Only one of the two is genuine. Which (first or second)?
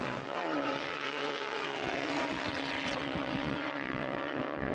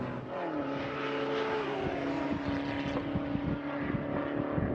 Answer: second